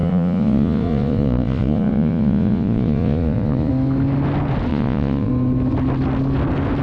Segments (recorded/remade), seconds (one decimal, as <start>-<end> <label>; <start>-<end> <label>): 0.0-3.7 remade; 3.7-4.7 recorded; 4.7-5.3 remade; 5.3-6.8 recorded